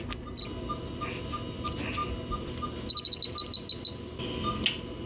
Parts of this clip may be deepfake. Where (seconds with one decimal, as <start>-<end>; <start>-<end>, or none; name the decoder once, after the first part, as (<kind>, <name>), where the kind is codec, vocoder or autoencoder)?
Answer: none